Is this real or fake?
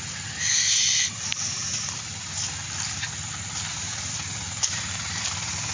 real